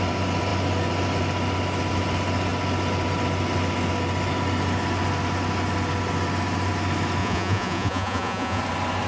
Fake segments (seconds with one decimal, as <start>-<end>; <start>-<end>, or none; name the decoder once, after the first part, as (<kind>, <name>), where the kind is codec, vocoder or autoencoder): 7.2-8.6 (vocoder, Vocos)